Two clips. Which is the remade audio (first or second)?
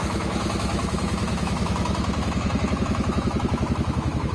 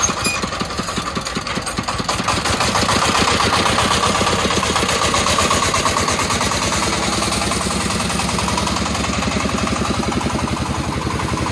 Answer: first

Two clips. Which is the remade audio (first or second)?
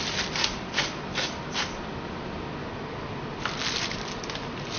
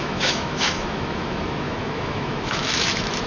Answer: second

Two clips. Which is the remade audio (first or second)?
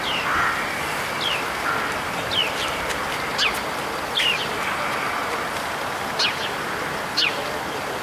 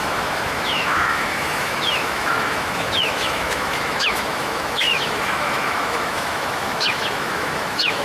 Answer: second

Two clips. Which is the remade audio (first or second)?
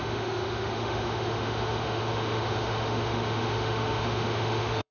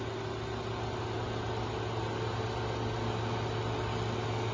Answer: first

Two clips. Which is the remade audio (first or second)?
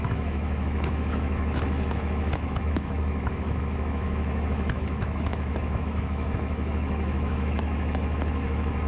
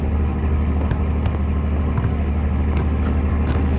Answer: first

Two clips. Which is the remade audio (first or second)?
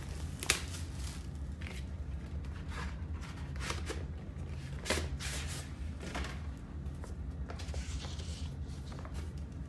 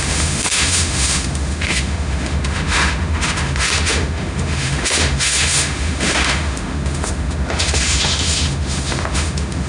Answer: second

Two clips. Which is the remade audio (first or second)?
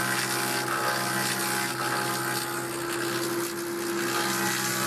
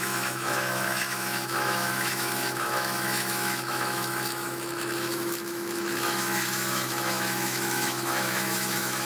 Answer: second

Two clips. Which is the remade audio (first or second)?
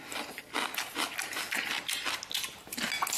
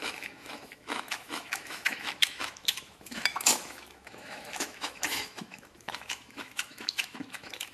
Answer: second